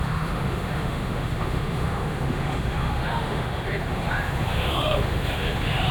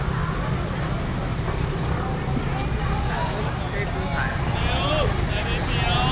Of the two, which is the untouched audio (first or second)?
second